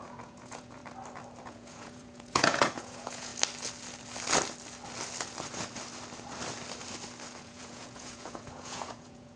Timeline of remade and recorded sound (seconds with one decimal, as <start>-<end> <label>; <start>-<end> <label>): 0.0-0.8 remade; 0.8-1.4 recorded; 1.4-3.3 remade; 3.3-7.4 recorded; 7.4-9.4 remade